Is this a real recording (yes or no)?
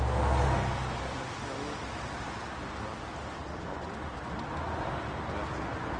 yes